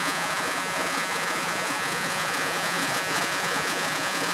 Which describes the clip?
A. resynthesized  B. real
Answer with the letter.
A